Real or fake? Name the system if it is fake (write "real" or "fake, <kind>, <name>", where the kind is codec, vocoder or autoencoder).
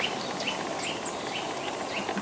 real